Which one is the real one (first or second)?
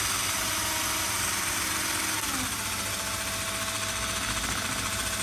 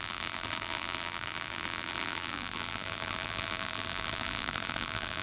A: first